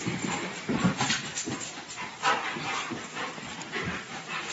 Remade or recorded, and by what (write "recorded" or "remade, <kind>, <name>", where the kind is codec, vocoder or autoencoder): recorded